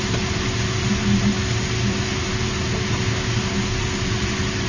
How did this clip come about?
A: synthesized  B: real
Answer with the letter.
B